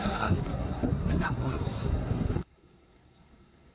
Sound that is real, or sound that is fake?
fake